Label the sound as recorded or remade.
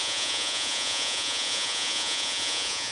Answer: remade